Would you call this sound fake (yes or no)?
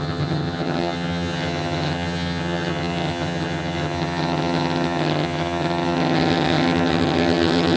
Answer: yes